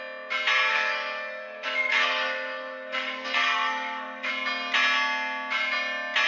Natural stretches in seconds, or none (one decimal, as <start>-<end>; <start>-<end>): 0.0-0.7; 4.3-6.3